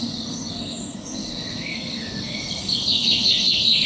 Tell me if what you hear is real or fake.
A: fake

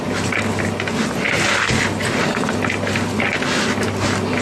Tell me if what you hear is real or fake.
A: real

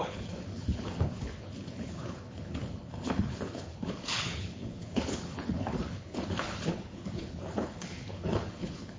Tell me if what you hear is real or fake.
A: fake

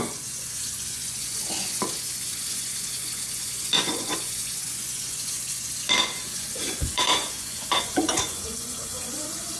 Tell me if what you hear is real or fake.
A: fake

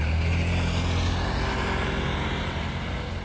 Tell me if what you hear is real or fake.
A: real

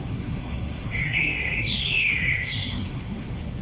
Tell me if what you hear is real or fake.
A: fake